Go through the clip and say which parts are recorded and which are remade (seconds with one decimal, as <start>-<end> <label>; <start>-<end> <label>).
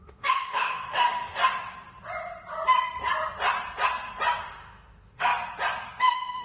0.0-1.4 remade; 1.4-4.4 recorded; 4.4-5.3 remade; 5.3-6.0 recorded; 6.0-6.4 remade